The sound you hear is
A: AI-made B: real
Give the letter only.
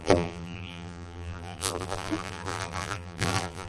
A